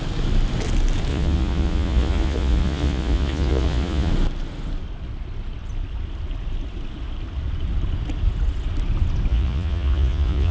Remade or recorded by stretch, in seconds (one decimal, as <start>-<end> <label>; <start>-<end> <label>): 0.0-1.1 recorded; 1.1-4.1 remade; 4.1-9.3 recorded; 9.3-10.5 remade